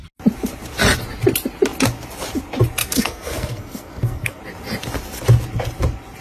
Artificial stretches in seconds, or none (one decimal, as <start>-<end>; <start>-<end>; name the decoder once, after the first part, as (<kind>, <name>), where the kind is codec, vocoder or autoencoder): 2.8-4.4 (codec, SNAC)

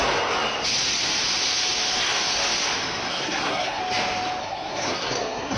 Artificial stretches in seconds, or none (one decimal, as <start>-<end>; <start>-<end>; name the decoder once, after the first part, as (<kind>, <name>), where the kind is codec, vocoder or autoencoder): 3.1-3.8 (codec, SNAC); 4.4-5.6

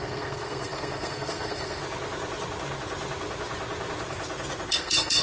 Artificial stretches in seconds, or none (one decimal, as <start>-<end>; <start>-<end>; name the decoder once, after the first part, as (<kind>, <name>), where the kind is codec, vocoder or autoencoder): 0.0-1.8 (codec, SNAC); 4.7-5.2

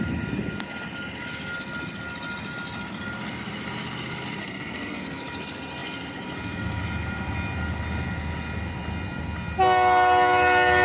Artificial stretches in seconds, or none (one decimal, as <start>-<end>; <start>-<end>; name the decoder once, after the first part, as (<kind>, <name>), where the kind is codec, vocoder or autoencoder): 4.4-5.0 (codec, SNAC)